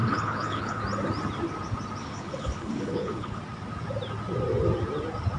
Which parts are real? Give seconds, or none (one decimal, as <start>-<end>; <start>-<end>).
0.8-2.0; 3.4-5.4

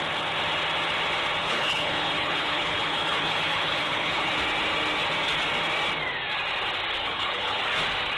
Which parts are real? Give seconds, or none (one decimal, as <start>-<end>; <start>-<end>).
0.0-1.4; 4.3-7.0; 7.6-8.2

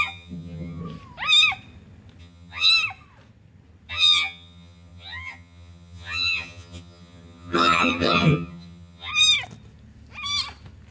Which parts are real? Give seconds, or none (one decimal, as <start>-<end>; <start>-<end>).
0.8-2.2; 2.7-3.9; 9.1-10.9